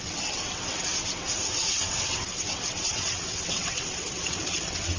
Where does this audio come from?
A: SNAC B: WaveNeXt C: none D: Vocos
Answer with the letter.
B